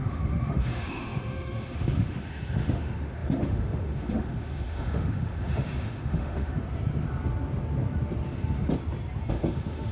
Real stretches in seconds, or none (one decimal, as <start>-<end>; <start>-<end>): 6.5-9.3